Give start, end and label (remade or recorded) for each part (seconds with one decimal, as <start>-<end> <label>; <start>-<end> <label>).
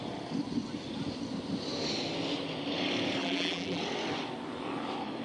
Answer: 0.0-3.2 recorded; 3.2-3.8 remade; 3.8-5.2 recorded